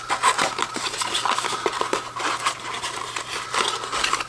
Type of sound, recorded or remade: recorded